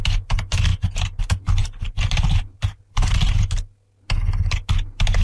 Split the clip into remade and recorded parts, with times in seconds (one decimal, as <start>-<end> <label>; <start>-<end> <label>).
0.0-5.2 recorded